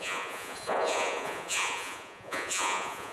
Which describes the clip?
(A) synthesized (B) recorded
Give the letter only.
A